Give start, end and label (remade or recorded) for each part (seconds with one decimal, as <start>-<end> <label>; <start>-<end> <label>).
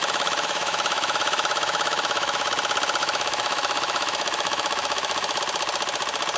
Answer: 0.0-2.5 remade; 2.5-3.0 recorded; 3.0-5.4 remade; 5.4-6.4 recorded